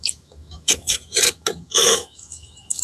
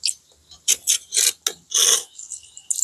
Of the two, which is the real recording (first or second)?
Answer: second